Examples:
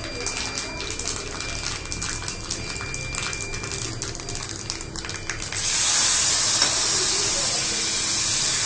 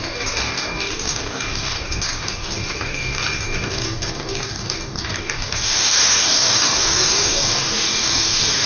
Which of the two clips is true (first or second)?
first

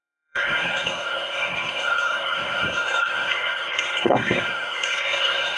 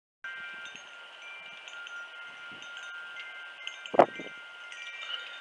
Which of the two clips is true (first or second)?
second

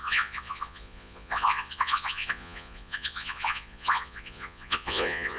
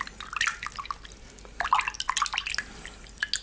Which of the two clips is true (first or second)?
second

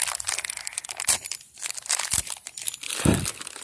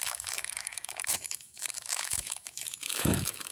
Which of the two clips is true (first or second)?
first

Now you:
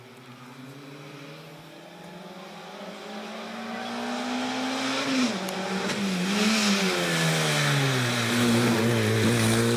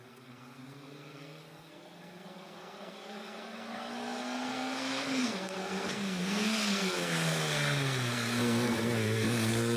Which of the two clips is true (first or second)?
first